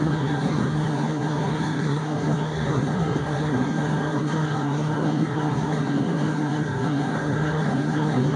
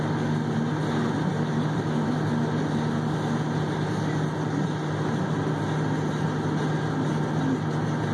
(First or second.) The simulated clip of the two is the first